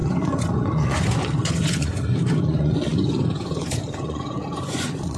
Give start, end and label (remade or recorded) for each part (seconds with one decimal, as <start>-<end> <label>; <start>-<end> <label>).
0.0-5.2 remade